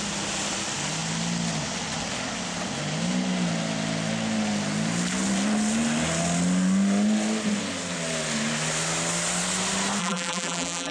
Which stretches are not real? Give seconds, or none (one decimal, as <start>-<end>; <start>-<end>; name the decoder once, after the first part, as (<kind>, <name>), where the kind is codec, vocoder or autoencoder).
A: 10.0-10.9 (vocoder, BigVGAN v2)